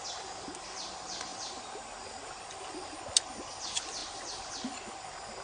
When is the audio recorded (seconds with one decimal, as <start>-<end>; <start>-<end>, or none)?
0.0-1.3; 3.0-4.0; 4.5-5.4